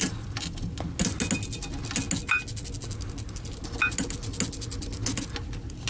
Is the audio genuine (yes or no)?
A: yes